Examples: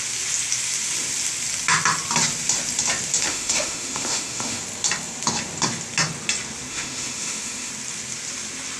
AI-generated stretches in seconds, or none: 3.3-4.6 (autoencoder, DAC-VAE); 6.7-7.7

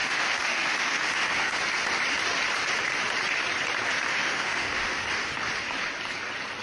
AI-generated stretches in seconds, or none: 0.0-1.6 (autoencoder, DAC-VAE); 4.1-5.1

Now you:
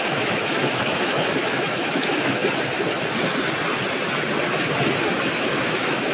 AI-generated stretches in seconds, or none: 0.0-2.4 (autoencoder, DAC-VAE); 5.5-6.1

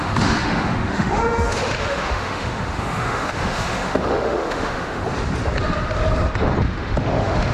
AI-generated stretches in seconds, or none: 0.0-5.0 (autoencoder, DAC-VAE); 6.7-7.5

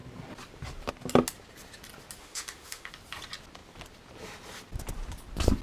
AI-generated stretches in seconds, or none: 2.2-2.9 (autoencoder, DAC-VAE)

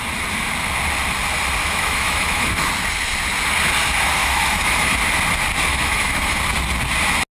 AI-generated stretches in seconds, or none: 1.6-2.7 (autoencoder, DAC-VAE); 4.2-4.9; 5.7-6.4